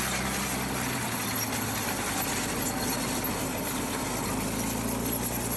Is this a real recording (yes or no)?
yes